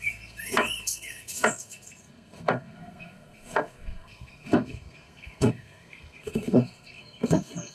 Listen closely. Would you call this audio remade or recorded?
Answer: remade